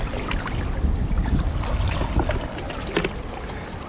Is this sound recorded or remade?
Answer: recorded